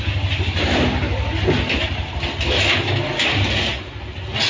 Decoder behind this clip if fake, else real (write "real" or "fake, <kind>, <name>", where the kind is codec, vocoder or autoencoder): real